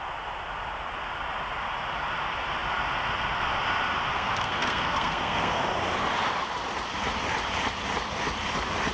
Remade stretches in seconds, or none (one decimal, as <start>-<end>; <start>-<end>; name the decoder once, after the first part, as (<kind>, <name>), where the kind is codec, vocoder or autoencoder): 4.1-5.6 (codec, SNAC)